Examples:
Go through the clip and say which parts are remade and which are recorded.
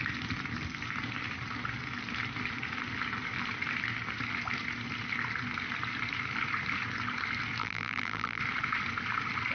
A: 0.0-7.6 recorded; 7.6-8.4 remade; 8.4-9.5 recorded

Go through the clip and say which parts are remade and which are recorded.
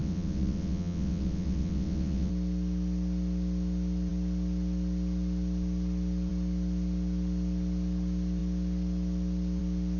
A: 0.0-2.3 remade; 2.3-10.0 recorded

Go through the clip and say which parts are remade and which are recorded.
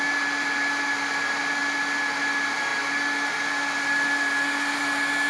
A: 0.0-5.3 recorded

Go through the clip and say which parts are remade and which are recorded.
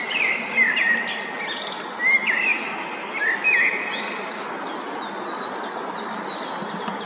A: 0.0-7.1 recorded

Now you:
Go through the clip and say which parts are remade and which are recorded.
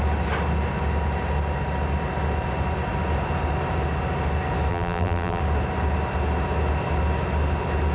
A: 0.0-4.7 recorded; 4.7-5.4 remade; 5.4-7.9 recorded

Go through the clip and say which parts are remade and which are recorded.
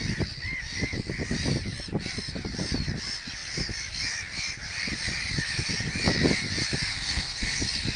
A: 0.0-6.9 recorded; 6.9-7.6 remade; 7.6-8.0 recorded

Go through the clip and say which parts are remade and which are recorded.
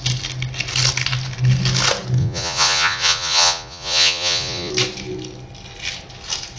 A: 0.0-2.2 recorded; 2.2-4.7 remade; 4.7-6.6 recorded